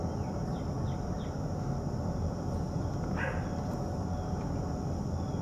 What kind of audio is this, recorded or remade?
recorded